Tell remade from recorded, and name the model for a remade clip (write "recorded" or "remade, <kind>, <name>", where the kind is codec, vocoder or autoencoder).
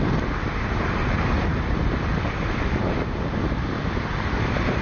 remade, vocoder, BigVGAN v2